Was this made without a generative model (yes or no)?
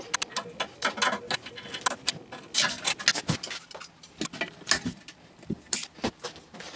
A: yes